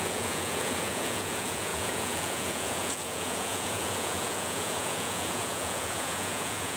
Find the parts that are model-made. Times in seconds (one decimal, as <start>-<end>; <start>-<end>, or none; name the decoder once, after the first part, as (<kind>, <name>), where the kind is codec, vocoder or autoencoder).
0.0-6.8 (vocoder, Vocos)

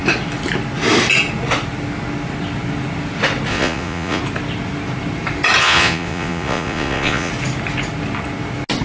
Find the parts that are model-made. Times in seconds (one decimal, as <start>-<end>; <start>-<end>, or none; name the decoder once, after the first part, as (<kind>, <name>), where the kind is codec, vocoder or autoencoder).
3.5-4.2 (vocoder, Vocos); 5.6-7.3

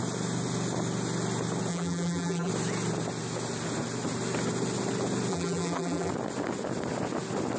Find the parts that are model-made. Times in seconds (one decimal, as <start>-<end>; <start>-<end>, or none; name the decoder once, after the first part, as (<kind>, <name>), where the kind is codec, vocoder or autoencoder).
1.7-2.5 (vocoder, BigVGAN v2); 5.3-6.1

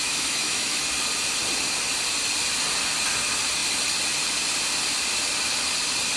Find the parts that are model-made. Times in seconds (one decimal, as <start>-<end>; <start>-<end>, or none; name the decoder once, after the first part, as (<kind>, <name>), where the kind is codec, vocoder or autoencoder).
0.0-0.8 (autoencoder, DAC-VAE)